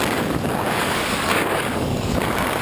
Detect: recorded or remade remade